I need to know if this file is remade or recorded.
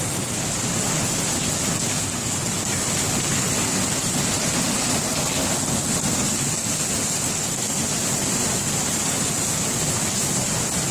recorded